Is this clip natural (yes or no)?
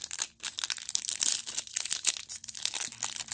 yes